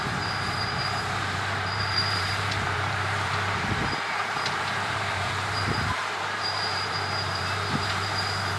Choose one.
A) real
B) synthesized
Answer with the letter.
B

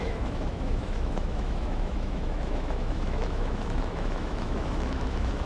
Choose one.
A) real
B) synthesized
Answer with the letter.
B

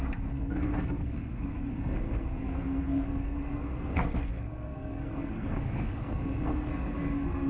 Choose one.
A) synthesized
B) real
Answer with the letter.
A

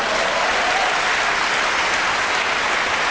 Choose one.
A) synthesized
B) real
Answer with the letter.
B